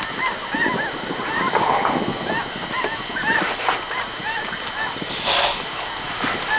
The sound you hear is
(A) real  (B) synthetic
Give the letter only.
A